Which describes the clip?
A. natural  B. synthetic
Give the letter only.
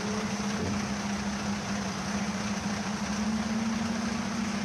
A